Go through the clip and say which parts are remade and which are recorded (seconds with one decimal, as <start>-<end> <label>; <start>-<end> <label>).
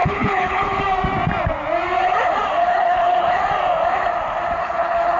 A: 0.0-0.8 remade; 0.8-2.6 recorded; 2.6-3.4 remade; 3.4-4.6 recorded; 4.6-5.2 remade